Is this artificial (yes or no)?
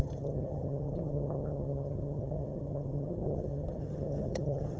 yes